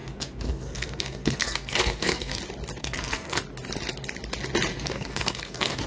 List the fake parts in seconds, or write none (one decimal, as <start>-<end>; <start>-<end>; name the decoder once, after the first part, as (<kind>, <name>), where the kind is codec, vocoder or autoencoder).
0.0-2.4 (codec, SNAC); 2.8-3.4; 4.7-5.9